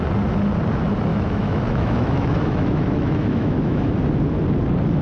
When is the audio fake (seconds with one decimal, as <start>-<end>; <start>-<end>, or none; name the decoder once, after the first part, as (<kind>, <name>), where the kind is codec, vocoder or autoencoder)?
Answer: 1.1-3.9 (autoencoder, DAC-VAE)